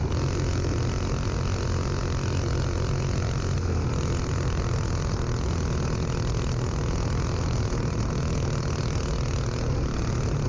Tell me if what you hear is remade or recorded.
recorded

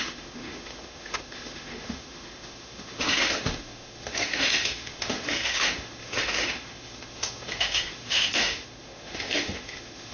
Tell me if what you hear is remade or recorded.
remade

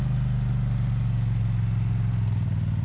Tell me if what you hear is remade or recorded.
recorded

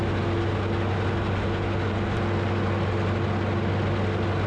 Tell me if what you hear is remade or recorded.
recorded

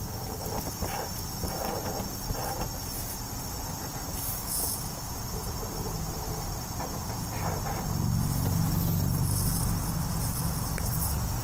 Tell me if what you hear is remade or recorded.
recorded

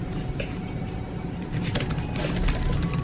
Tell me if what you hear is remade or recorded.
recorded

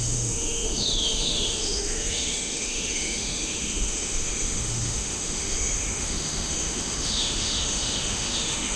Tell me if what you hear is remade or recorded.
remade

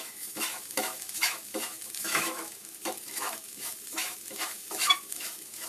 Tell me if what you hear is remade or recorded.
remade